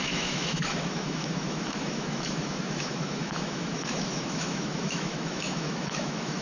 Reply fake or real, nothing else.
fake